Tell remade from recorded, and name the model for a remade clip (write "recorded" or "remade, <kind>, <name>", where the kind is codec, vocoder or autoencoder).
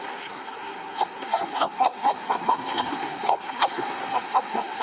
remade, codec, SNAC